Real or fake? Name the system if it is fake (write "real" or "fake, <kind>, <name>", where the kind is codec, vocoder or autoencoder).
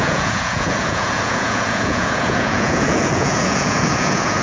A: fake, vocoder, Vocos